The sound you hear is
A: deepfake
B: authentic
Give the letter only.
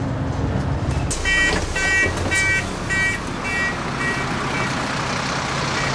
B